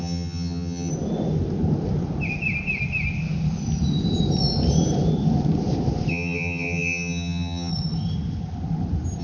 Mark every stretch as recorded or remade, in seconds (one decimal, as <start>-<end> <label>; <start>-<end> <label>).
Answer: 0.0-0.9 remade; 0.9-6.1 recorded; 6.1-7.7 remade; 7.7-9.2 recorded